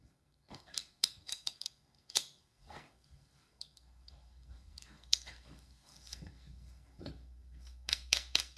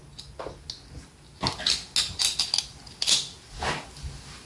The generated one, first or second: first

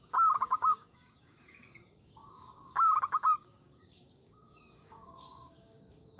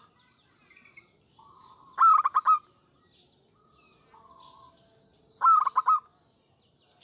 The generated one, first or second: first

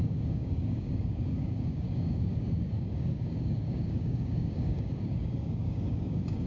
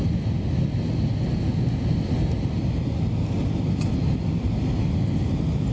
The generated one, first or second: first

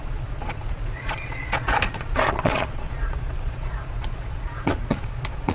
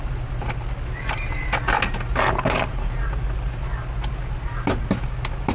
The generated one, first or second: first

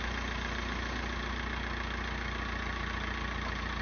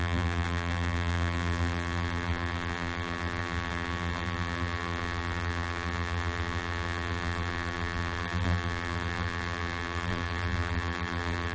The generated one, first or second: second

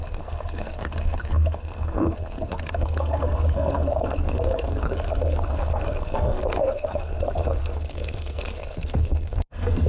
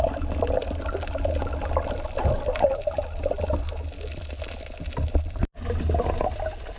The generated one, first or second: first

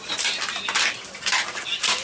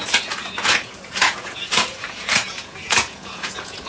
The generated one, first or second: second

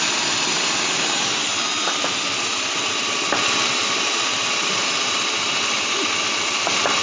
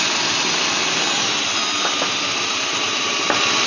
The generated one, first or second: first